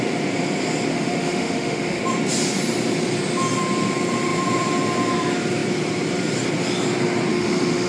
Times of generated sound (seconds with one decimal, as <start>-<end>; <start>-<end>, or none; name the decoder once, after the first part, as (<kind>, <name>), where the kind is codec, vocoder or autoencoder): 0.9-2.0 (autoencoder, DAC-VAE); 7.3-7.9